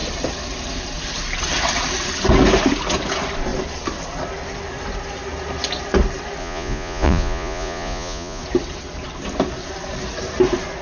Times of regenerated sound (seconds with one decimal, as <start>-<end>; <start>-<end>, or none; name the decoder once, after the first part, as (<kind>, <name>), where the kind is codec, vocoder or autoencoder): 6.4-8.4 (vocoder, Vocos)